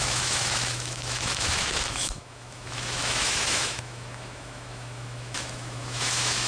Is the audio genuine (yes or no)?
no